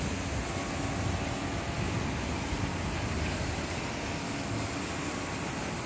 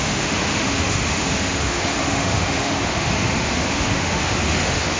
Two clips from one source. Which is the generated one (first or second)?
second